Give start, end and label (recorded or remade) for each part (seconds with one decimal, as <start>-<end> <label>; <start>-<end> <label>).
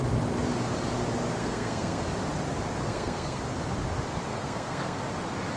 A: 0.0-1.4 recorded; 1.4-2.0 remade; 2.0-2.9 recorded; 2.9-3.4 remade; 3.4-4.3 recorded; 4.3-5.0 remade; 5.0-5.6 recorded